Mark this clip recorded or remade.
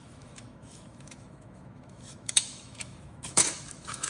remade